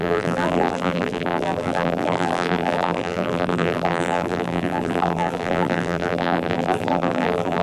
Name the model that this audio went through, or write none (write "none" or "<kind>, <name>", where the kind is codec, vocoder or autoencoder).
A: vocoder, BigVGAN v2